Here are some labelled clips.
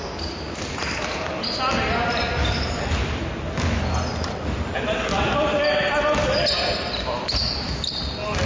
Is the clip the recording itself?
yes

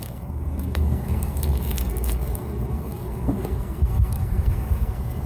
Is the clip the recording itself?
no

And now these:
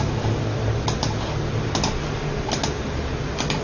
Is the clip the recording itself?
yes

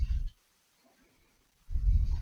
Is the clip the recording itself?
no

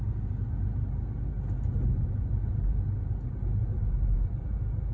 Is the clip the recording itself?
yes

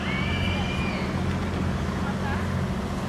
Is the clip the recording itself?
yes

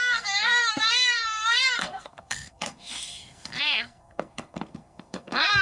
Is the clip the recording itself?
no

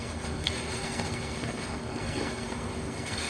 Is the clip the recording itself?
no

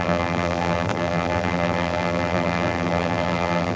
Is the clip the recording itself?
no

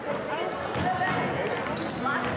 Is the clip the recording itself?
yes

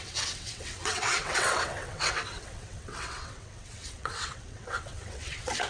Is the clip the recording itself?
no